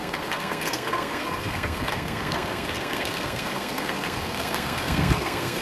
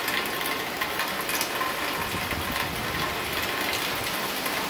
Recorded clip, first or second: second